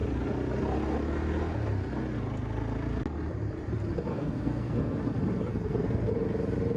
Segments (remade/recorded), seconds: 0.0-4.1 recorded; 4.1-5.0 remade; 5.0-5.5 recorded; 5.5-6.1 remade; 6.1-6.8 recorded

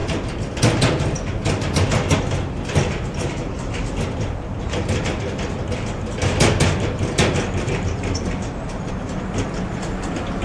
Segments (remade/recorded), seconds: 0.0-10.4 recorded

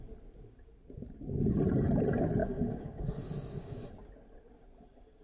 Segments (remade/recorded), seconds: 0.0-2.4 recorded; 2.4-3.9 remade; 3.9-5.2 recorded

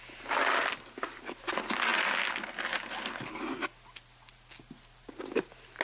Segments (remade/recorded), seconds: 0.0-5.8 recorded